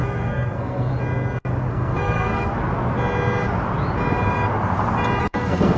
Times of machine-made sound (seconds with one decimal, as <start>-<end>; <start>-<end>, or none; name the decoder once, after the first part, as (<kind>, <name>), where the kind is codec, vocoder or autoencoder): 0.0-0.9 (codec, SNAC); 1.7-2.5; 5.2-5.8